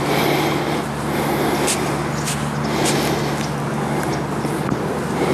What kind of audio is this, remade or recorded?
recorded